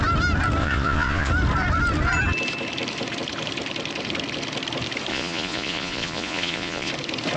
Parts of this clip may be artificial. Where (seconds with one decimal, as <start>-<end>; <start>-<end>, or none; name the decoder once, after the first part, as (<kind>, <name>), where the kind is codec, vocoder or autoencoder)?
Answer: 0.6-1.3 (vocoder, Vocos); 5.1-6.9